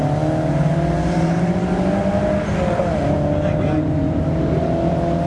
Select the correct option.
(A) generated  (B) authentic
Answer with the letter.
B